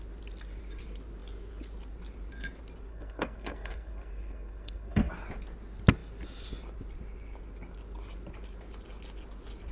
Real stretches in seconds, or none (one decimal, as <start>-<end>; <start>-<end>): 0.0-2.9; 5.1-9.7